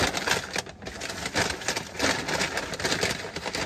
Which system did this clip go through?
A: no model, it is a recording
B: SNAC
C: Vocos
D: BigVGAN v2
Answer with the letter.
A